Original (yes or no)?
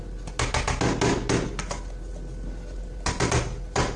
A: yes